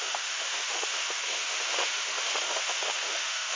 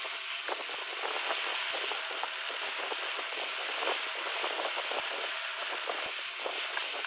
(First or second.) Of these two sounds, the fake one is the first